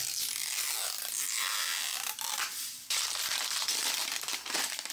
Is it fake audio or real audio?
real